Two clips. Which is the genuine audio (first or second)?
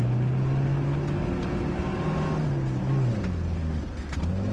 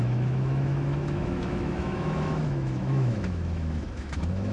first